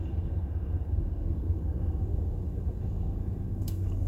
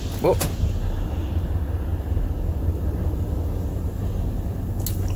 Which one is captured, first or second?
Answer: second